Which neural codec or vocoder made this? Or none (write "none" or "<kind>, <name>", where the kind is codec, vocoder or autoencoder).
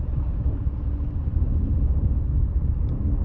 vocoder, BigVGAN v2